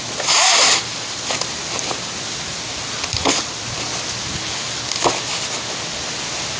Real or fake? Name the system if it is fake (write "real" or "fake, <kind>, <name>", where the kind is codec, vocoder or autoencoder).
real